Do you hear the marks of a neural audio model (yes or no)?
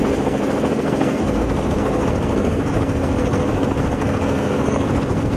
yes